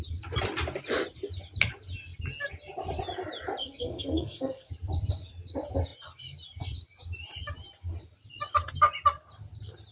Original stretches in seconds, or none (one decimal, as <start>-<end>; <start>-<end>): 0.0-3.6; 4.7-9.9